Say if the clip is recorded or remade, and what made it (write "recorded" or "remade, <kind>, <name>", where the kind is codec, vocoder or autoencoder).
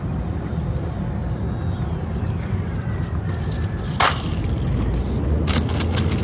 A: recorded